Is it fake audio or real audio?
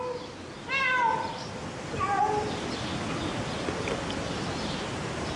real